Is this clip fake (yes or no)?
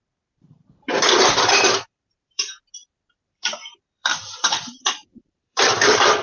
yes